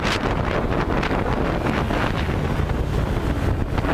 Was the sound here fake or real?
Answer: real